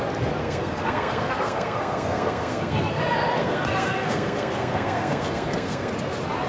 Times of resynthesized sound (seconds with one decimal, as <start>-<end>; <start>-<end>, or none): 0.4-3.0; 3.4-5.9